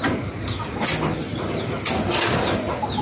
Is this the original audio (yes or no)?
yes